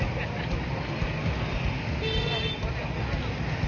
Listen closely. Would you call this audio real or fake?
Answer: real